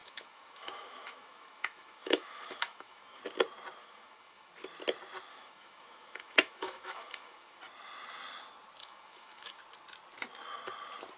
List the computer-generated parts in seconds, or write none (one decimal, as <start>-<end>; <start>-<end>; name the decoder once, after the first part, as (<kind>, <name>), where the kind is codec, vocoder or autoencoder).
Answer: 0.0-3.2 (autoencoder, DAC-VAE); 3.8-4.5; 5.3-7.6; 8.8-9.6